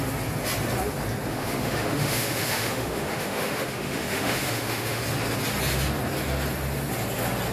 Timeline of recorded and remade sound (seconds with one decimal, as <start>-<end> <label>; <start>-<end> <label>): 0.0-1.3 recorded; 1.3-5.0 remade; 5.0-7.5 recorded

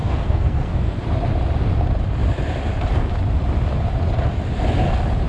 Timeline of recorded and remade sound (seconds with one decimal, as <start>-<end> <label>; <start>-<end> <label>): 0.0-1.0 remade; 1.0-5.3 recorded

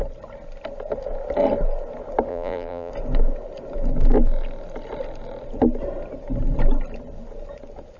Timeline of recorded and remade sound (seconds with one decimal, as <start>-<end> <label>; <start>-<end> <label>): 0.0-2.3 recorded; 2.3-2.9 remade; 2.9-8.0 recorded

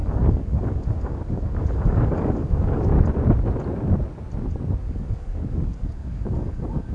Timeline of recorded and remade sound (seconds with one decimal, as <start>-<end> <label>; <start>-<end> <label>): 0.0-2.9 remade; 2.9-4.8 recorded; 4.8-6.9 remade

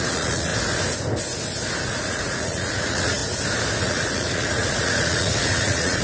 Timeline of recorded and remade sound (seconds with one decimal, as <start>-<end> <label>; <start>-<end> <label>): 0.0-0.5 remade; 0.5-1.8 recorded; 1.8-3.2 remade; 3.2-3.8 recorded; 3.8-6.0 remade

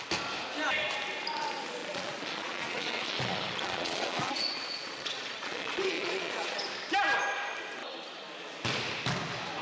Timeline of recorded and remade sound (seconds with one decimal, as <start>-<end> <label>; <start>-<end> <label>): 0.0-1.8 recorded; 1.8-6.6 remade; 6.6-9.6 recorded

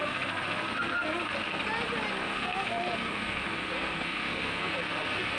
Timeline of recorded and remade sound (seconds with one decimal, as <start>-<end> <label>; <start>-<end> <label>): 0.0-1.6 remade; 1.6-2.1 recorded; 2.1-5.4 remade